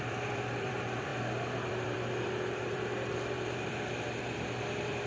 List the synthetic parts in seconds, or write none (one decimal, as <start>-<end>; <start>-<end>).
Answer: 0.0-5.1